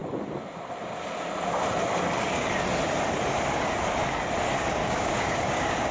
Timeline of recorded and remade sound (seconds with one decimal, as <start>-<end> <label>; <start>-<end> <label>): 0.0-4.8 recorded; 4.8-5.9 remade